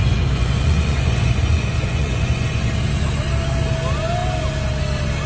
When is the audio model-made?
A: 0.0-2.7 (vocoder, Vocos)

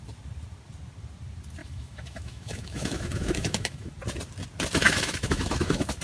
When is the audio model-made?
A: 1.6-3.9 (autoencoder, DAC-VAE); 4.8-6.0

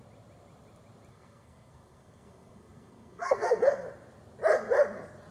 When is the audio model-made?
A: 1.1-3.6 (codec, SNAC)

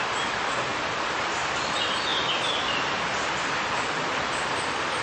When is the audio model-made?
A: none